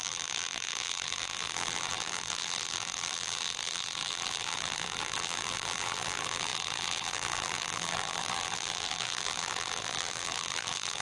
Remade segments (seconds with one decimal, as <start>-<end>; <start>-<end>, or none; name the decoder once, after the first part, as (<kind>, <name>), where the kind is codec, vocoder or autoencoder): 0.0-11.0 (vocoder, BigVGAN v2)